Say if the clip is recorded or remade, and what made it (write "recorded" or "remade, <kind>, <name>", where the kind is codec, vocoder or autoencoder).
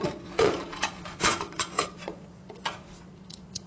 remade, vocoder, Vocos